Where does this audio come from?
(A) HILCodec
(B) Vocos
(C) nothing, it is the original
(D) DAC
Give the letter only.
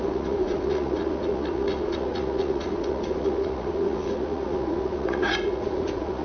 B